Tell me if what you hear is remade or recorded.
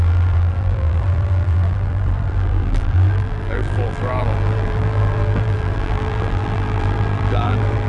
remade